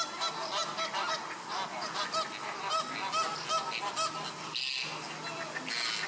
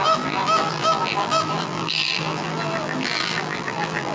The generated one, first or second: second